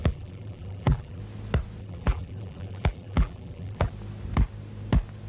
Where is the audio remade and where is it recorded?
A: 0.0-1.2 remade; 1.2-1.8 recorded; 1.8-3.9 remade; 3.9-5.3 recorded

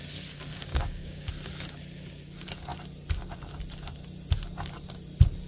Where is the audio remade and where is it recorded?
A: 0.0-0.5 recorded; 0.5-1.3 remade; 1.3-5.5 recorded

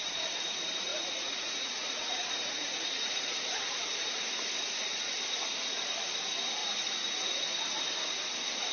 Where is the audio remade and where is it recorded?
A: 0.0-0.9 recorded; 0.9-3.3 remade; 3.3-6.6 recorded; 6.6-7.8 remade; 7.8-8.7 recorded

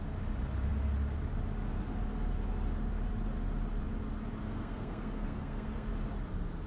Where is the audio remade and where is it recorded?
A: 0.0-4.4 recorded; 4.4-5.9 remade; 5.9-6.7 recorded